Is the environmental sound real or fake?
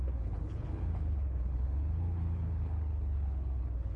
fake